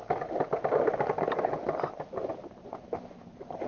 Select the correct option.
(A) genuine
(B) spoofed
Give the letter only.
A